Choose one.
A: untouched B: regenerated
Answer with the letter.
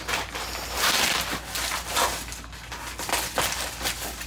A